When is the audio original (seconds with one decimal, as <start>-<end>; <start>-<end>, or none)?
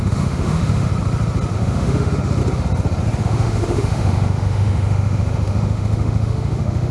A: 0.9-1.5; 2.4-3.2